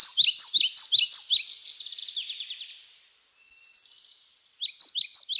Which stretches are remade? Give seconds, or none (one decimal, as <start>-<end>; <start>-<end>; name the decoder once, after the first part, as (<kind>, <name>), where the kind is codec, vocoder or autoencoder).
none